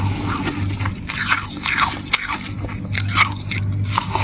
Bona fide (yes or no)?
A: yes